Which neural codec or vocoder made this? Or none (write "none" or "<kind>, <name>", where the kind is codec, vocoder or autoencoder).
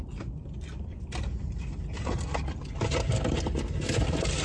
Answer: none